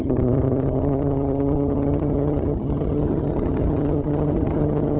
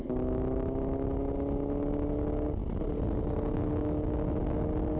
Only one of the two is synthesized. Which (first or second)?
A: first